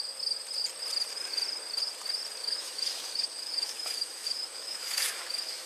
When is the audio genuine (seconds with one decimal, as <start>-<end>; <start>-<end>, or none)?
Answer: 0.0-2.4